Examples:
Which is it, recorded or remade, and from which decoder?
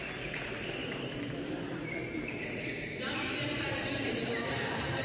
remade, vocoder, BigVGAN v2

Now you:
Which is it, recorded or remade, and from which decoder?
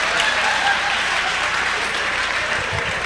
remade, vocoder, BigVGAN v2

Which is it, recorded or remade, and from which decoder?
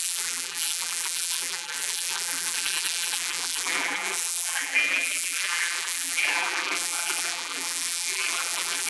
remade, vocoder, BigVGAN v2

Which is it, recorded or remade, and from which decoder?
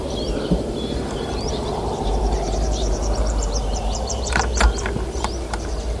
remade, vocoder, BigVGAN v2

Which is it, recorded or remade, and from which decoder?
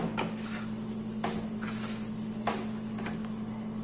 recorded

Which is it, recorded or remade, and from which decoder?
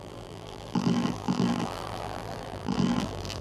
remade, vocoder, BigVGAN v2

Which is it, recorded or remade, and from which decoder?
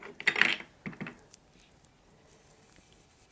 recorded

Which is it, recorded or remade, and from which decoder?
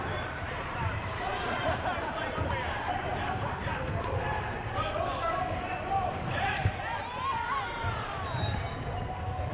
remade, vocoder, BigVGAN v2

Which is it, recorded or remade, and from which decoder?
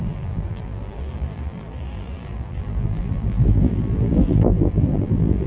remade, vocoder, BigVGAN v2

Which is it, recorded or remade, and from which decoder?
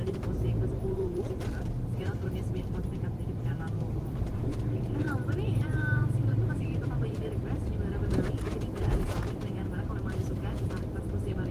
remade, vocoder, BigVGAN v2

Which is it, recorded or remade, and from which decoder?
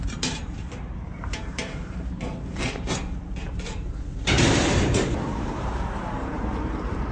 remade, vocoder, BigVGAN v2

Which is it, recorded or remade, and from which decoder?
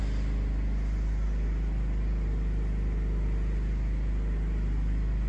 recorded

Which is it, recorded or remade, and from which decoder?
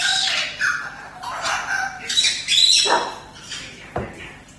remade, vocoder, BigVGAN v2